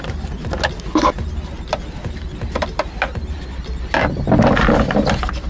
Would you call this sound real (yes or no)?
yes